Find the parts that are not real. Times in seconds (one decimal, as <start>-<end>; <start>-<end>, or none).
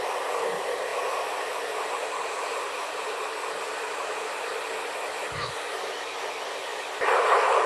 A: none